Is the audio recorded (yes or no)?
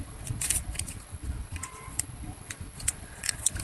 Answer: no